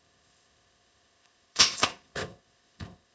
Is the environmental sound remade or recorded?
remade